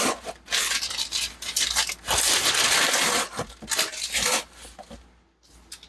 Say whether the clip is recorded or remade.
recorded